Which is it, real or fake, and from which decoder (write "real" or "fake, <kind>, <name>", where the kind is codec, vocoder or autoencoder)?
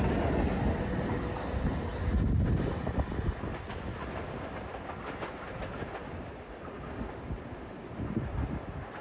real